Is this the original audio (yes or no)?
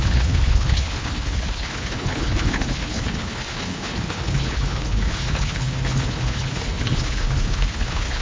no